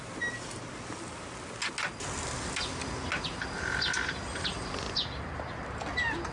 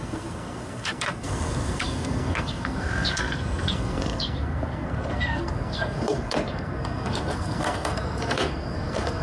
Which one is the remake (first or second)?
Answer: second